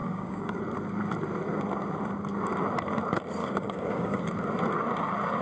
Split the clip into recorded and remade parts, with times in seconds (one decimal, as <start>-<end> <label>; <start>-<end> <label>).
0.0-0.6 remade; 0.6-3.4 recorded; 3.4-4.2 remade; 4.2-5.4 recorded